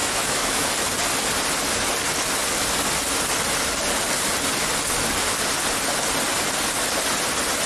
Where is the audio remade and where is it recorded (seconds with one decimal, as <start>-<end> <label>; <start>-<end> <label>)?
0.0-0.7 remade; 0.7-7.7 recorded